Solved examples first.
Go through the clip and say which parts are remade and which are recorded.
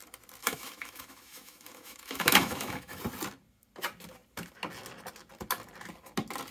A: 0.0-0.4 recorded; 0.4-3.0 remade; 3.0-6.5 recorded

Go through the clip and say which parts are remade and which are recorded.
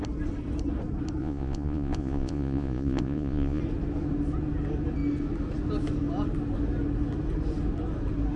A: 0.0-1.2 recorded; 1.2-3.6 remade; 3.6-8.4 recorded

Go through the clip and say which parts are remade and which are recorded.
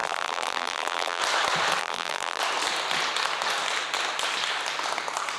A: 0.0-1.2 remade; 1.2-1.8 recorded; 1.8-2.4 remade; 2.4-5.4 recorded